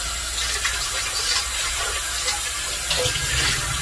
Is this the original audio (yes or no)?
yes